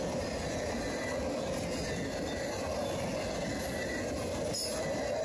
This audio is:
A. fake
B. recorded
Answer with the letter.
B